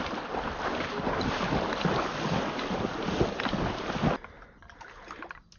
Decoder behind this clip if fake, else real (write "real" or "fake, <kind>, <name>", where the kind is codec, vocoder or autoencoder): real